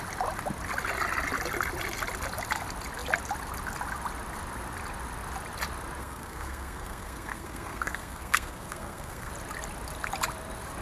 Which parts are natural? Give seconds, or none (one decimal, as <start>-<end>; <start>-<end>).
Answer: 0.0-6.0; 9.3-10.8